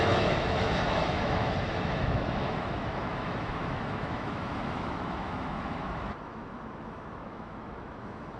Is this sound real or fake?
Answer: fake